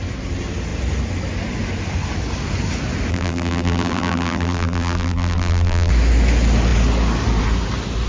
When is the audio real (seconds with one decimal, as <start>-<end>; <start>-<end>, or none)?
0.0-3.1; 5.9-8.1